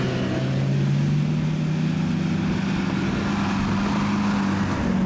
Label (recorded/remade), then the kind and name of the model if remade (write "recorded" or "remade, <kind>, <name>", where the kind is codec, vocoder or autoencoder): recorded